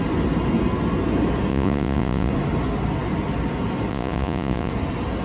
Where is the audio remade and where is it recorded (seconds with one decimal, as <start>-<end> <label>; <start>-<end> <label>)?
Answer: 0.0-1.5 recorded; 1.5-2.3 remade; 2.3-3.9 recorded; 3.9-4.7 remade; 4.7-5.2 recorded